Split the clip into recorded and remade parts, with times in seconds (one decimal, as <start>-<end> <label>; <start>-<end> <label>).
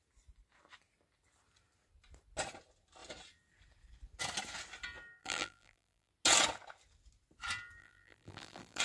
0.0-5.2 recorded; 5.2-6.1 remade; 6.1-7.8 recorded; 7.8-8.8 remade